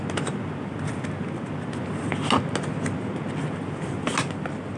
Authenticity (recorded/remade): recorded